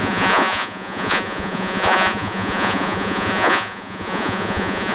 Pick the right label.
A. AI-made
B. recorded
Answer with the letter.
A